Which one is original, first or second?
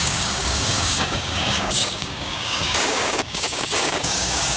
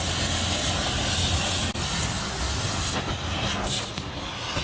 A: second